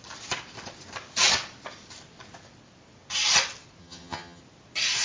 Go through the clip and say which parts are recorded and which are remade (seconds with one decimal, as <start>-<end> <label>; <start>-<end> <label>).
0.0-3.8 recorded; 3.8-4.4 remade; 4.4-5.0 recorded